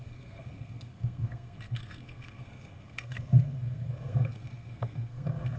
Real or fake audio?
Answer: fake